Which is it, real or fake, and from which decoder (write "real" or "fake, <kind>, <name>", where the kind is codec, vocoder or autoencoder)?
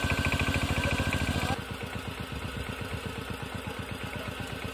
real